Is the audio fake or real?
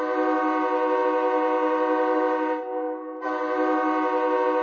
real